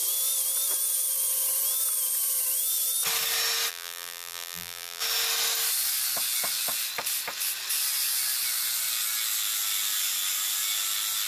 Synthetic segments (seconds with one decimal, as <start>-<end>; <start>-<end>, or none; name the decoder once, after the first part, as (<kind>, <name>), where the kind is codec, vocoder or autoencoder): 3.7-5.0 (vocoder, BigVGAN v2)